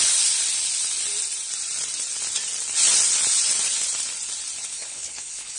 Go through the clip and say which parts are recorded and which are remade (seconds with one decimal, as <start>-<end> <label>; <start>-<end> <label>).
0.0-4.7 recorded; 4.7-5.6 remade